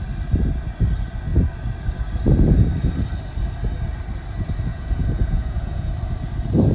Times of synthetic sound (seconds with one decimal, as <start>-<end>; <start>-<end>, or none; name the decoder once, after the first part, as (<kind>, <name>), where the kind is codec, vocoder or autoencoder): 4.7-5.9 (vocoder, Vocos)